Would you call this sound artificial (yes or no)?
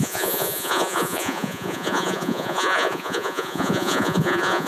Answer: yes